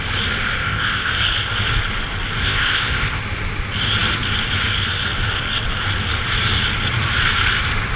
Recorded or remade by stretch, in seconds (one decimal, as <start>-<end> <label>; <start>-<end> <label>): 0.0-0.6 recorded; 0.6-1.1 remade; 1.1-2.4 recorded; 2.4-3.2 remade; 3.2-8.0 recorded